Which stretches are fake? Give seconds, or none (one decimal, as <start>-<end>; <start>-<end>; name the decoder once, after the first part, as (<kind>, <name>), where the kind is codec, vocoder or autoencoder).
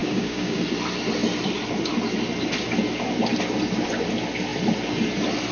0.0-0.6 (codec, DAC)